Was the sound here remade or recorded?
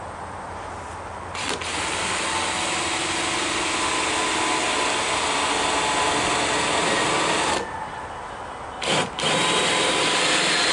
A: recorded